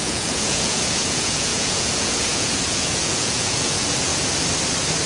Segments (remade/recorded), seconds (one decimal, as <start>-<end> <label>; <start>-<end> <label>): 0.0-4.1 remade; 4.1-5.1 recorded